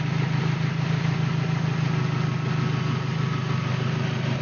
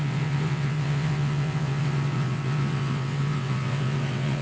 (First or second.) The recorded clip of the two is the first